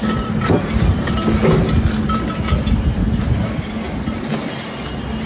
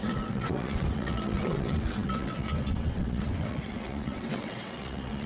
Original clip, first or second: first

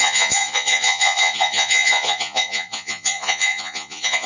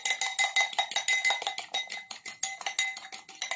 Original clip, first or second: second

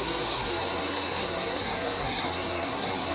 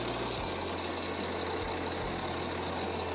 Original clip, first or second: second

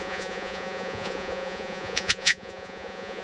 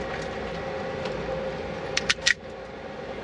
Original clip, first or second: second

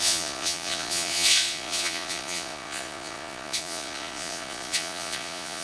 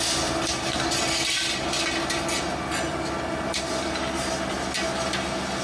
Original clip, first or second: second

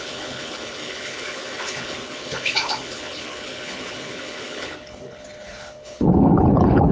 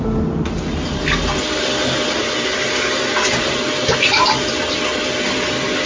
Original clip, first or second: second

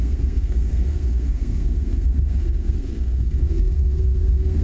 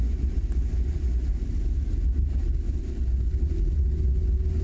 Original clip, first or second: second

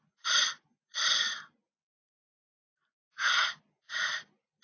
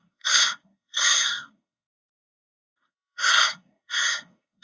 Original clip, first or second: first